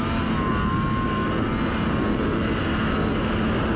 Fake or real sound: real